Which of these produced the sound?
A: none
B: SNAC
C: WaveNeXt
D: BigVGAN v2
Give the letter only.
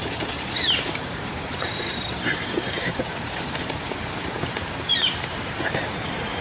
D